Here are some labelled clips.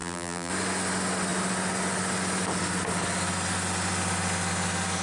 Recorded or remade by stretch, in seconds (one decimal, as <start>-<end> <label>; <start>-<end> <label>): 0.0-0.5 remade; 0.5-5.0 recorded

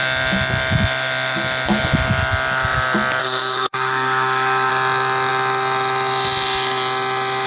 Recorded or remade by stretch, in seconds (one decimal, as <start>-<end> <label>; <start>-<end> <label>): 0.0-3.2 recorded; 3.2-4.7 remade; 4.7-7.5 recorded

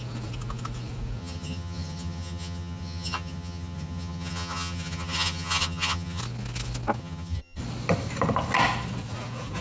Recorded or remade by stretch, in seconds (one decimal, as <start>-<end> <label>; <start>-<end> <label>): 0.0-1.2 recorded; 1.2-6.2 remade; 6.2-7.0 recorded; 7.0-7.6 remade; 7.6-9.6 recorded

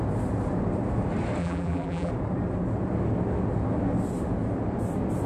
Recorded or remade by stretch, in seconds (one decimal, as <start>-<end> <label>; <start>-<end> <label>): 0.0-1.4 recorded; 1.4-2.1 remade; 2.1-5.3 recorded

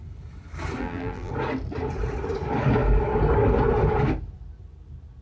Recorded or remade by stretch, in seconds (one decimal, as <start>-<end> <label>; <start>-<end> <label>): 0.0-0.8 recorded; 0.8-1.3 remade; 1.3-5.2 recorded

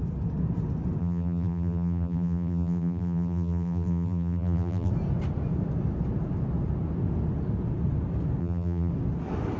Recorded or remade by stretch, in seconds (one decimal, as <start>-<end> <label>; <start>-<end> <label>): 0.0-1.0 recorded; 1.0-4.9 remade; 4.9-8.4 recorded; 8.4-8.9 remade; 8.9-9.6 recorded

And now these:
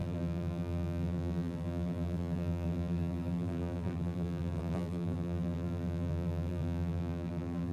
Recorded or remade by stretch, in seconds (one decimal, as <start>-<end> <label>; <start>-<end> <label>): 0.0-7.7 remade